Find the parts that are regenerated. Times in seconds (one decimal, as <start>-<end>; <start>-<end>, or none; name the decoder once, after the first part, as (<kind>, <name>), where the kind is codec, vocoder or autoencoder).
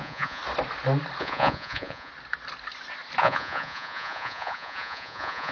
0.0-0.4 (vocoder, Vocos); 1.2-2.1; 3.2-5.5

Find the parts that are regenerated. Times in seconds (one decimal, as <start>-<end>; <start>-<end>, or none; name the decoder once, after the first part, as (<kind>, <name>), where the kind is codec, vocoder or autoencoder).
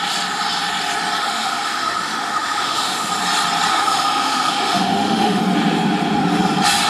1.2-3.1 (autoencoder, DAC-VAE); 3.7-5.4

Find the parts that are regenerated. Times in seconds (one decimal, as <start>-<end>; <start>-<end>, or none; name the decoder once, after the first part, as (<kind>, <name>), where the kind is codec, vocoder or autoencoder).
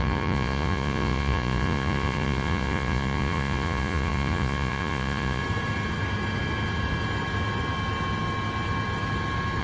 0.0-5.4 (vocoder, Vocos)